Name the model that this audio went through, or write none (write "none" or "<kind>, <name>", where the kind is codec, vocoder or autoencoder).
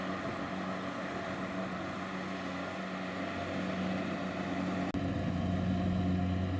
none